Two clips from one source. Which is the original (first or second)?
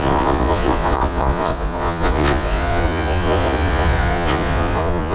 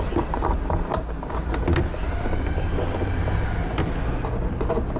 second